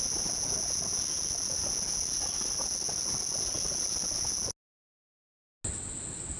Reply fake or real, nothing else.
real